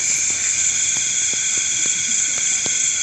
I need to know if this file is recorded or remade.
recorded